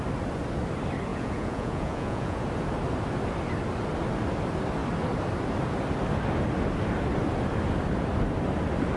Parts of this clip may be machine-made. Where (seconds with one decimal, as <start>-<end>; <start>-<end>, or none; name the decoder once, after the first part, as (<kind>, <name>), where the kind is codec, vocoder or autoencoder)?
1.1-2.4 (vocoder, Vocos)